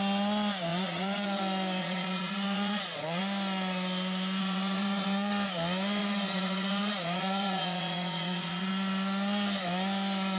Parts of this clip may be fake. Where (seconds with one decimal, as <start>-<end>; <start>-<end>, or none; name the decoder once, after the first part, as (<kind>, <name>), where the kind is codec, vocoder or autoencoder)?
0.7-1.4 (vocoder, Vocos); 1.8-3.2; 4.4-5.3; 6.0-8.7

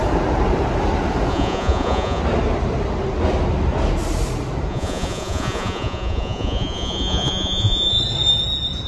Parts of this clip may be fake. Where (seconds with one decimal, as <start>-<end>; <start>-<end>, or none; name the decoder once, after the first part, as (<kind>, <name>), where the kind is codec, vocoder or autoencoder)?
1.3-2.2 (vocoder, Vocos); 4.7-8.0

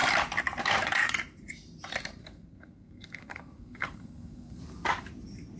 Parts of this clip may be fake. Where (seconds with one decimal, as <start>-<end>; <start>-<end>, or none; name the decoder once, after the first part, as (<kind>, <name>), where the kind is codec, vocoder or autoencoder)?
2.2-4.6 (codec, SNAC)

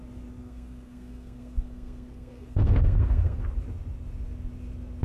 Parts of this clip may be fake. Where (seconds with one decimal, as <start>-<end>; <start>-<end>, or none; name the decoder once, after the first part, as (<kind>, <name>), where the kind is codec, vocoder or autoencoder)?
0.4-3.4 (codec, SNAC)

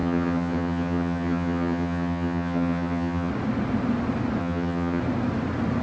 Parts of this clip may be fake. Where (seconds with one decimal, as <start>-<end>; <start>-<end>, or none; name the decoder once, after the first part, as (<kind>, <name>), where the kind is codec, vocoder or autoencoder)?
0.0-3.3 (vocoder, HiFi-GAN); 4.4-5.0

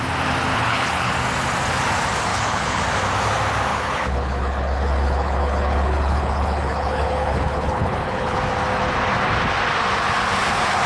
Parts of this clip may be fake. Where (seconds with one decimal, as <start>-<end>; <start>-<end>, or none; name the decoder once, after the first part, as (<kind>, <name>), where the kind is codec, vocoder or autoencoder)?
0.5-1.1 (codec, HILCodec); 2.3-2.8; 3.7-8.4

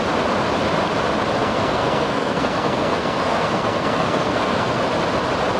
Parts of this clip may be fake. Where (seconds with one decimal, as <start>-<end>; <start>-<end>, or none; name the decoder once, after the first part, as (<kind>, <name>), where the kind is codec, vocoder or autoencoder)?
1.4-4.8 (codec, SNAC)